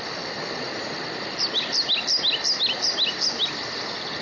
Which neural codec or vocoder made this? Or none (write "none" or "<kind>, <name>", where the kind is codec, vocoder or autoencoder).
none